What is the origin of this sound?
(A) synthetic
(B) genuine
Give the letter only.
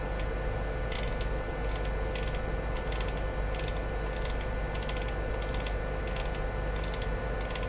B